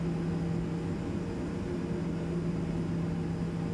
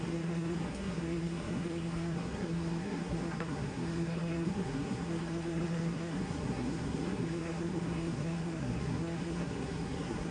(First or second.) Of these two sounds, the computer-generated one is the second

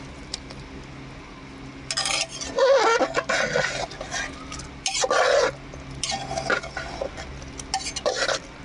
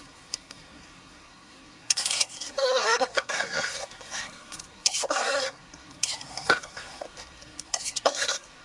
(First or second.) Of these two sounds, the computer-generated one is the second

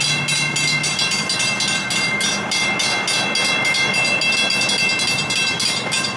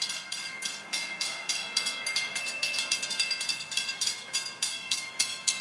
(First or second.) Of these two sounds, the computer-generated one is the second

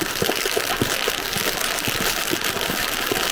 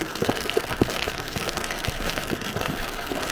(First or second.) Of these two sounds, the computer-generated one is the second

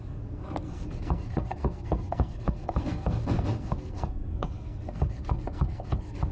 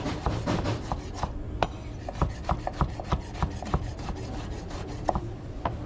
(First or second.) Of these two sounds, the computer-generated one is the first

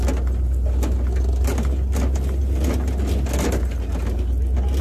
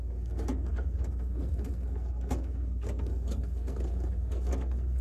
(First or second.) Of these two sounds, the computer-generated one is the second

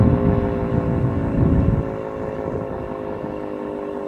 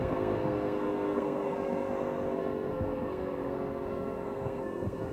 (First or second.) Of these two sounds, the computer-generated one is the second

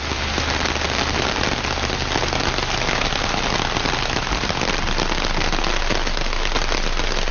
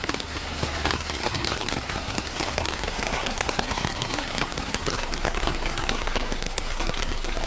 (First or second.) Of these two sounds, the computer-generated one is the second